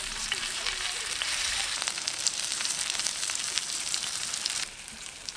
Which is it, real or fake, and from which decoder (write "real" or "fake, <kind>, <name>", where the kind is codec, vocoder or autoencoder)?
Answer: fake, vocoder, BigVGAN v2